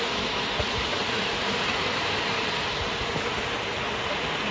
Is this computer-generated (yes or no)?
no